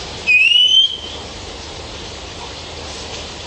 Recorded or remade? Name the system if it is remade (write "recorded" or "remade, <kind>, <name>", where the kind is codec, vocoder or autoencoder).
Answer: remade, vocoder, BigVGAN v2